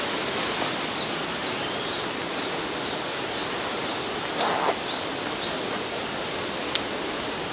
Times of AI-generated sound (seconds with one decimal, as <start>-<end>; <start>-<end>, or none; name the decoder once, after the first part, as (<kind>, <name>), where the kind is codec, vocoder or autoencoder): none